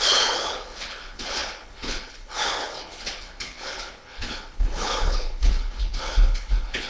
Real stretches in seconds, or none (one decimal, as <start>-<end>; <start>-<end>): none